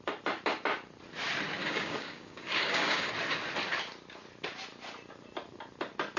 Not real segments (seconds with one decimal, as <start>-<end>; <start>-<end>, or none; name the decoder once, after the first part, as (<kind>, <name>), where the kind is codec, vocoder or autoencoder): 1.6-3.1 (codec, DAC)